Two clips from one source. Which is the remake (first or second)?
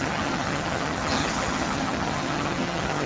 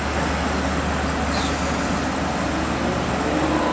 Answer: first